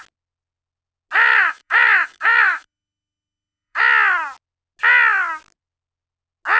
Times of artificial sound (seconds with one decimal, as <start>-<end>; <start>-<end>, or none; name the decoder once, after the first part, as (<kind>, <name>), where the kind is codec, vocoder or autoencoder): 1.3-3.8 (autoencoder, DAC-VAE)